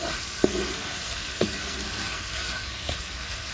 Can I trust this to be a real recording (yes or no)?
no